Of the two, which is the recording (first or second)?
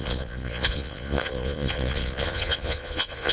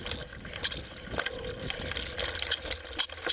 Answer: second